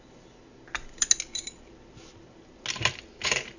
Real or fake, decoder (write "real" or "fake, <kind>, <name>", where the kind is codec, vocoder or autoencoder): real